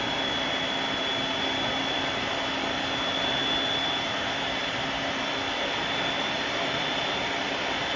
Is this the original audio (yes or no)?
yes